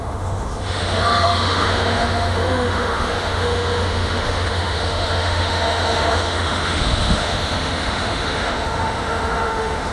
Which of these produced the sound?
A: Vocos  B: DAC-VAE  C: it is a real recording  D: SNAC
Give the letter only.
B